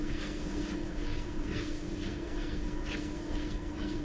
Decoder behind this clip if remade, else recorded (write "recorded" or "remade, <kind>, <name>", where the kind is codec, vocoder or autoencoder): remade, codec, SNAC